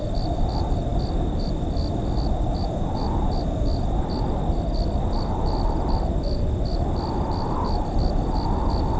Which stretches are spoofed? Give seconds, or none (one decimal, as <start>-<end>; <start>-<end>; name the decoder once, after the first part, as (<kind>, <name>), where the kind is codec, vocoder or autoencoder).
none